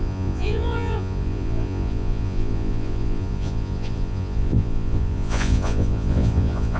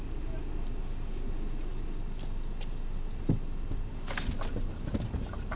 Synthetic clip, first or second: first